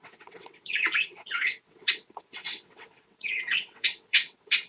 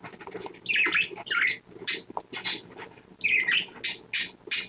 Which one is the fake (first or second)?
first